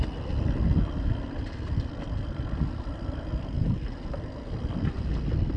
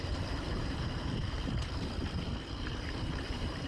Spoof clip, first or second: second